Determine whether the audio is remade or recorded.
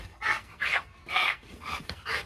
remade